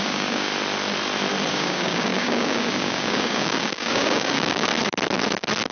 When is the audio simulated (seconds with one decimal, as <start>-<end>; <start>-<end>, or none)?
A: 0.0-0.5; 1.5-4.7